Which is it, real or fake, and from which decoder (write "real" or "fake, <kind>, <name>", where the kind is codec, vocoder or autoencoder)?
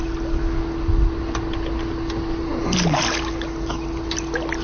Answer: real